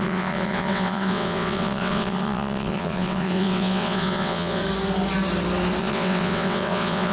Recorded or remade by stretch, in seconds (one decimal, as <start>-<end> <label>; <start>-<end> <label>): 0.0-4.6 remade; 4.6-5.8 recorded; 5.8-7.1 remade